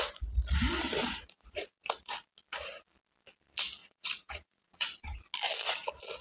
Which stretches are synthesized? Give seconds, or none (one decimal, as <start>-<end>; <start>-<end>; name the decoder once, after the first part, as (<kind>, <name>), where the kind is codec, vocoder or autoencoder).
1.0-2.1 (vocoder, Vocos); 3.8-5.2